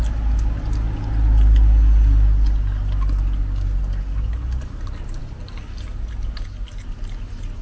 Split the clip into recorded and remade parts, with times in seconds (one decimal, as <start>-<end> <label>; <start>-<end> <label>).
0.0-7.6 recorded